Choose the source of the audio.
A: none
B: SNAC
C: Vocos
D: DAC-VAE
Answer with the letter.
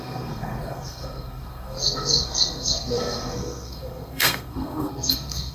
B